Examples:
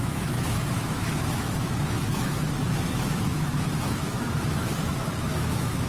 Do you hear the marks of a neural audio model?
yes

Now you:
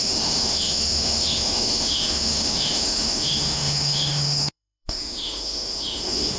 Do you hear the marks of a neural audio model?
yes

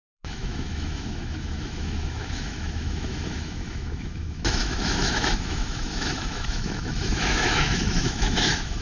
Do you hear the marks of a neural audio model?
yes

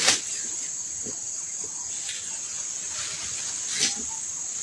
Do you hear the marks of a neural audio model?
no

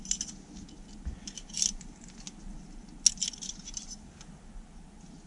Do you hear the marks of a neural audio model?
no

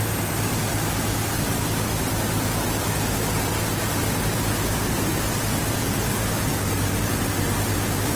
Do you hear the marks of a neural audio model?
no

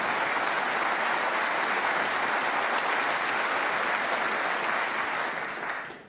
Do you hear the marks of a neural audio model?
no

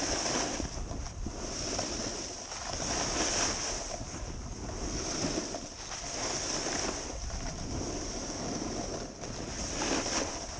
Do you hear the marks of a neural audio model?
no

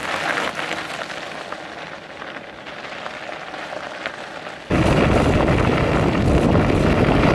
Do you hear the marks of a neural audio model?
no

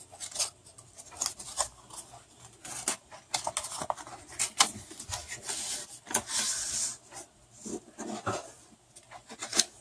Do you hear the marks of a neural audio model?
no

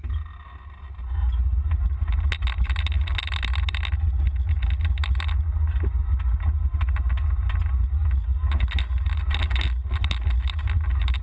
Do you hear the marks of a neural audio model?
no